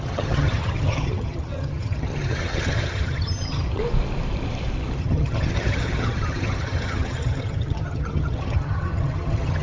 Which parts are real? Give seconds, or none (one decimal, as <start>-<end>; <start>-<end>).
3.8-5.0